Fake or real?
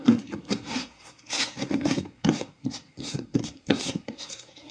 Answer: fake